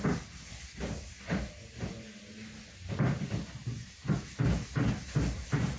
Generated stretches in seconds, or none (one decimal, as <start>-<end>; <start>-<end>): none